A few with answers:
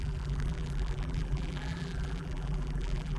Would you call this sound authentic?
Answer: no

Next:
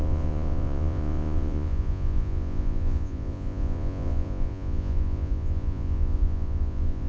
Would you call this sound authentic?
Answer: no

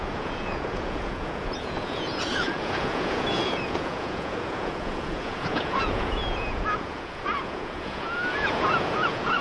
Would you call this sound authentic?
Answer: no